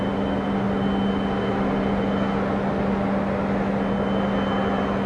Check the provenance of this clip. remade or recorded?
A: recorded